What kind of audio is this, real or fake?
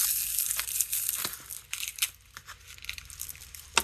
real